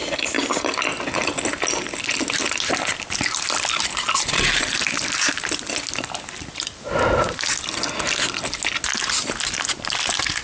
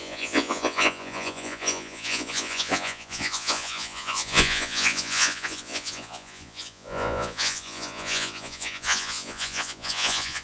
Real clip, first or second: first